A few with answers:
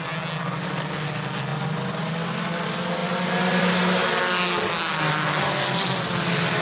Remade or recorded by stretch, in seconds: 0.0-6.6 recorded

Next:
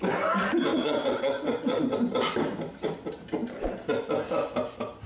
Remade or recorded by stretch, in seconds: 0.0-0.7 recorded; 0.7-1.8 remade; 1.8-5.1 recorded

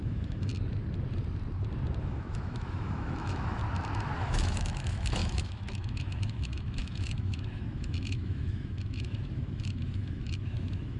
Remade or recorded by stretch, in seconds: 0.0-0.5 remade; 0.5-2.0 recorded; 2.0-3.6 remade; 3.6-4.2 recorded; 4.2-11.0 remade

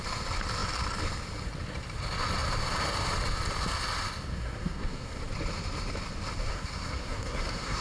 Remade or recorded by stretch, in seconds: 0.0-4.3 recorded; 4.3-5.2 remade; 5.2-6.4 recorded; 6.4-7.8 remade

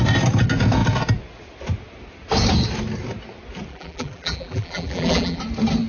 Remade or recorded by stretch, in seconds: 0.0-3.7 recorded; 3.7-5.4 remade; 5.4-5.9 recorded